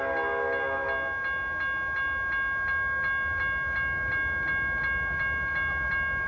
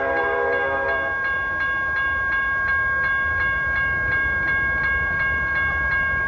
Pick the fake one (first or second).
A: second